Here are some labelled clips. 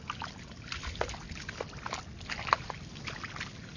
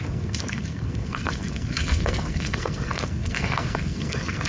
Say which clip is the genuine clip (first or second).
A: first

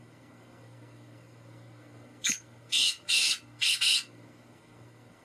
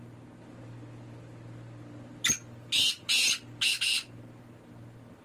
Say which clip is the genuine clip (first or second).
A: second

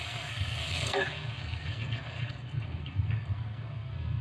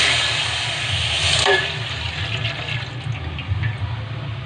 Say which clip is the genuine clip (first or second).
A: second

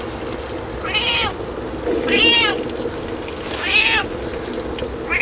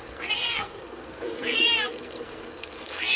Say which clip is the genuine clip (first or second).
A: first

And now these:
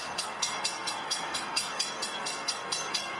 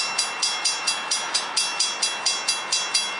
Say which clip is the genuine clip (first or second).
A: second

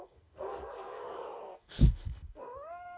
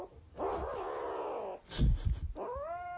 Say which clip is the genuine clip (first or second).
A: second